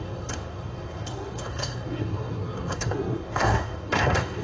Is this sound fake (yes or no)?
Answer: yes